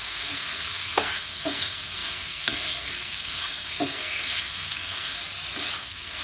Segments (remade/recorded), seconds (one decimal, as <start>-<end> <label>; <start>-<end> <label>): 0.0-5.2 remade; 5.2-5.8 recorded; 5.8-6.2 remade